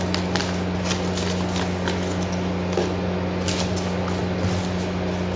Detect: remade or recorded recorded